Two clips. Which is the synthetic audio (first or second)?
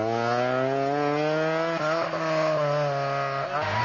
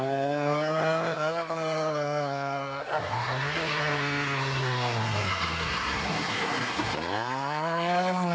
second